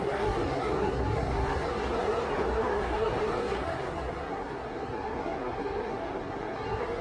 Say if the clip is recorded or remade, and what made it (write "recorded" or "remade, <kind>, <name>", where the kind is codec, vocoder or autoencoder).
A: remade, codec, SNAC